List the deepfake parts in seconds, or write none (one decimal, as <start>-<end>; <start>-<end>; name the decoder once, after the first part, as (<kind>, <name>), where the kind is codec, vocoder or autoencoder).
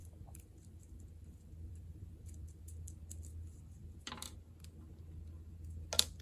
0.0-2.6 (vocoder, BigVGAN v2); 3.3-4.1